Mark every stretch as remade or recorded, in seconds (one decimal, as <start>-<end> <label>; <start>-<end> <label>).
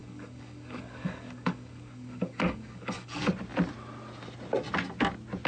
0.0-3.3 remade; 3.3-5.5 recorded